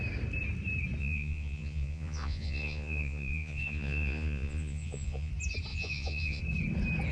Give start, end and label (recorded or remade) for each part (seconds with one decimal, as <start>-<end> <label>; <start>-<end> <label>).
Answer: 0.0-1.0 recorded; 1.0-5.3 remade; 5.3-5.7 recorded; 5.7-6.4 remade; 6.4-7.1 recorded